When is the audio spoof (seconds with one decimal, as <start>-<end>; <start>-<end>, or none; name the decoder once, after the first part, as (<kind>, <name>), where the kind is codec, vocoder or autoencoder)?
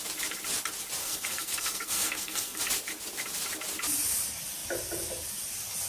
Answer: 1.0-2.6 (codec, SNAC)